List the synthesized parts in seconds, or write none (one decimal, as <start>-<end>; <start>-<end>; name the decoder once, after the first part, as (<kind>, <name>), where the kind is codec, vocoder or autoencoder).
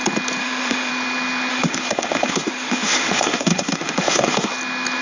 0.4-0.9 (autoencoder, DAC-VAE); 1.5-4.5